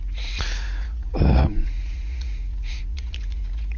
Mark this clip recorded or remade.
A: remade